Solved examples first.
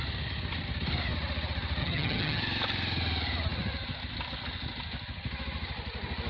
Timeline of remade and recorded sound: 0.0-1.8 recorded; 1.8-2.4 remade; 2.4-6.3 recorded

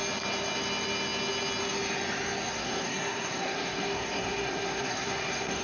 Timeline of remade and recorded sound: 0.0-2.5 recorded; 2.5-5.6 remade

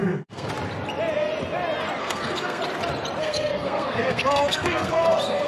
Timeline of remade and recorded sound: 0.0-0.5 remade; 0.5-2.0 recorded; 2.0-2.6 remade; 2.6-3.2 recorded; 3.2-5.5 remade

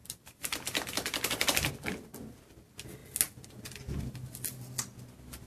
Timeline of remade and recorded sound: 0.0-1.7 remade; 1.7-5.5 recorded